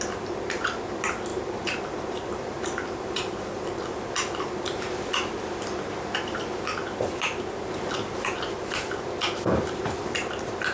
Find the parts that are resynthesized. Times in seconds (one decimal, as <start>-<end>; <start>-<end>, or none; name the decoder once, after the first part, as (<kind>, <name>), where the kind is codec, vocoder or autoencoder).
1.3-3.8 (vocoder, BigVGAN v2)